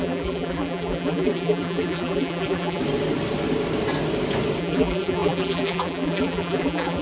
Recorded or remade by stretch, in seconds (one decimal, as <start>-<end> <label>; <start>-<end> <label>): 0.0-2.8 remade; 2.8-4.6 recorded; 4.6-7.0 remade